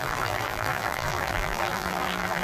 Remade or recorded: remade